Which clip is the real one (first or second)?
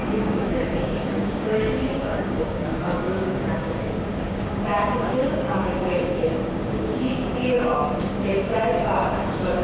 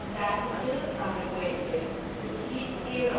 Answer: second